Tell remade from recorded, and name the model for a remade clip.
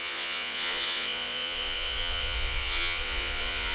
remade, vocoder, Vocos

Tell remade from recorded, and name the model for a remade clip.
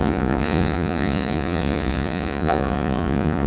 remade, vocoder, Vocos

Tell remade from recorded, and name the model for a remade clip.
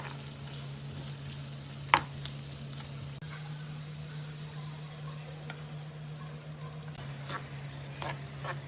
recorded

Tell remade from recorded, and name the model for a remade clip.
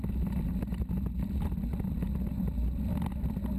recorded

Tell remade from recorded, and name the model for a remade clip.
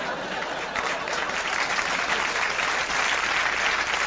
recorded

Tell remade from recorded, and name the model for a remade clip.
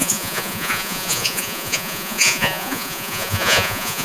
remade, vocoder, Vocos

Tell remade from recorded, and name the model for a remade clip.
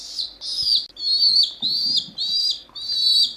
recorded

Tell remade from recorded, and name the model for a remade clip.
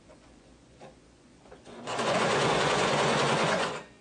remade, vocoder, Vocos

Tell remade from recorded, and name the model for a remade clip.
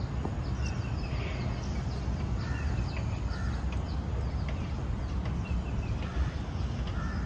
recorded